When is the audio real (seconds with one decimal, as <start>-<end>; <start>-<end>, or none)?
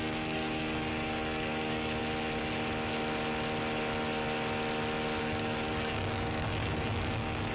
2.0-5.2